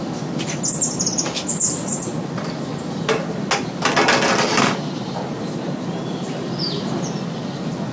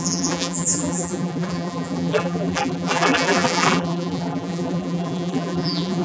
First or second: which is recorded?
first